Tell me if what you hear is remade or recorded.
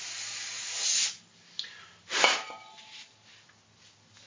recorded